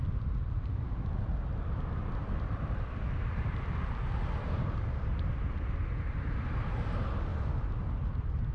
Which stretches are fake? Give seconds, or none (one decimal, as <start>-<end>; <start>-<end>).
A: 2.2-5.6; 7.3-7.9